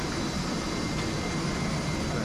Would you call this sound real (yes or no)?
yes